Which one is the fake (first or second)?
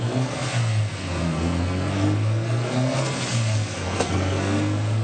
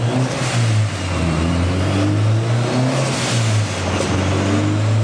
first